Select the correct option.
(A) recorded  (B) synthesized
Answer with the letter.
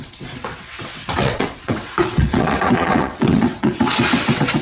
B